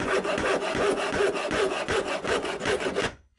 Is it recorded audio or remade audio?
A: remade